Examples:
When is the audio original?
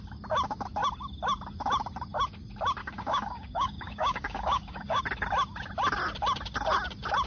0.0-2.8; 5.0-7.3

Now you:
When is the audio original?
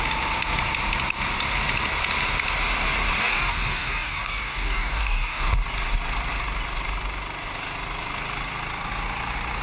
0.0-3.2; 5.5-9.6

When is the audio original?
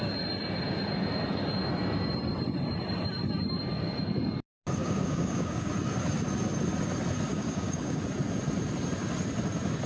0.0-4.8; 5.7-7.3; 8.0-9.9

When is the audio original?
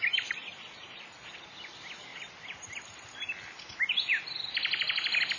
0.0-5.4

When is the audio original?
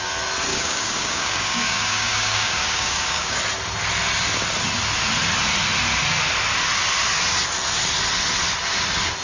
0.0-0.5; 3.4-9.2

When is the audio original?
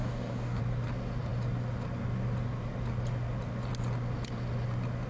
0.6-5.1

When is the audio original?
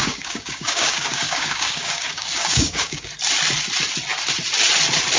3.1-5.2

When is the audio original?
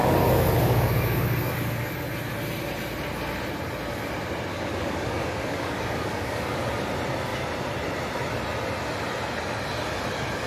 1.9-4.5; 6.7-10.5